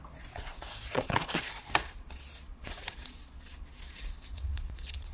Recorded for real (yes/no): no